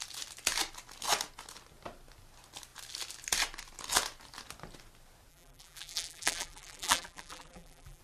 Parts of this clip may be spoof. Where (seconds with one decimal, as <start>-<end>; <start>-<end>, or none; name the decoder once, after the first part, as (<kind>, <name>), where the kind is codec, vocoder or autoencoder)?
5.3-8.0 (vocoder, BigVGAN v2)